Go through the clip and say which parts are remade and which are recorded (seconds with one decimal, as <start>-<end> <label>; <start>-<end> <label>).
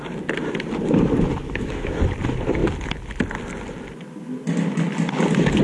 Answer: 0.0-1.4 recorded; 1.4-2.0 remade; 2.0-5.6 recorded